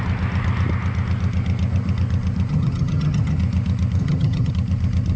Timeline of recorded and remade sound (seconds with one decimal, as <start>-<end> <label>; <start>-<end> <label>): 0.0-2.5 recorded; 2.5-3.4 remade; 3.4-4.0 recorded; 4.0-4.5 remade; 4.5-5.2 recorded